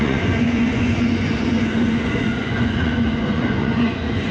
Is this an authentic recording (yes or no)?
no